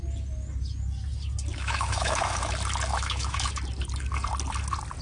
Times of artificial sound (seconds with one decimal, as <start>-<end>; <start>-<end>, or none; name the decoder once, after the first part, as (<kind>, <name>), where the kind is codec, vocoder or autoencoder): 1.5-2.5 (autoencoder, DAC-VAE); 2.9-3.5